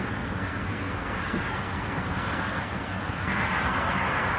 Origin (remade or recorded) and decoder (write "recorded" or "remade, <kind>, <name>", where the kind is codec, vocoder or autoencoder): remade, codec, SNAC